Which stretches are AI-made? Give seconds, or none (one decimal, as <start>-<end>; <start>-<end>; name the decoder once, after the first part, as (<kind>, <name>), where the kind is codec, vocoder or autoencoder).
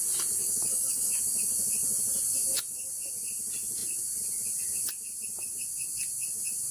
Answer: 0.4-1.1 (codec, DAC)